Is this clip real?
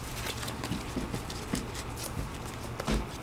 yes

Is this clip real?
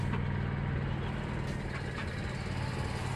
yes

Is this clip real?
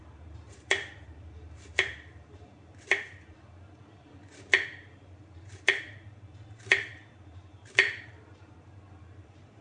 no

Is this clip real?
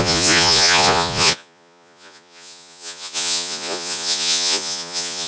no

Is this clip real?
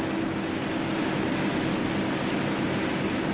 yes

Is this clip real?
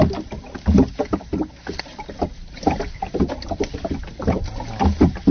yes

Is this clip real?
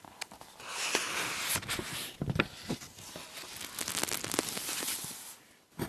yes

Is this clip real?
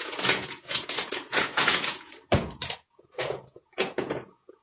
no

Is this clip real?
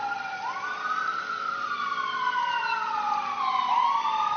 yes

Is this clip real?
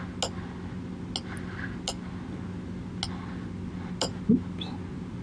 yes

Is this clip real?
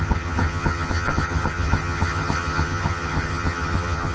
no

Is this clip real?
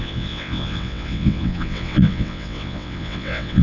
no